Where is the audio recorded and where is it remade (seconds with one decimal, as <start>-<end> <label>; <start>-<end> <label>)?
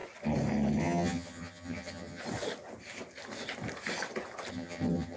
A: 0.0-0.8 recorded; 0.8-2.2 remade; 2.2-4.5 recorded; 4.5-5.2 remade